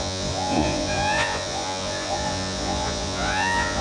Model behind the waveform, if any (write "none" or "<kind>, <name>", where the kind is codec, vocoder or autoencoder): vocoder, Vocos